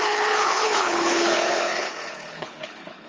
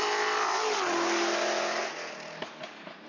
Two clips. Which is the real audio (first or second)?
second